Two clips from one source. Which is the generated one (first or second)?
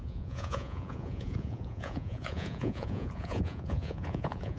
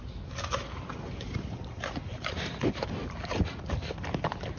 first